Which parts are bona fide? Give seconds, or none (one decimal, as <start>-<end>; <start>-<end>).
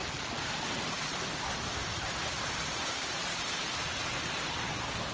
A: 0.9-1.8